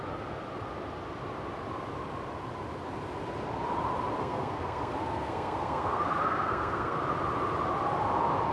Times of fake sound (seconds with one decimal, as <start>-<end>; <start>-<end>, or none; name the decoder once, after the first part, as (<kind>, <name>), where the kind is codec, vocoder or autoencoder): 4.2-7.0 (codec, SNAC)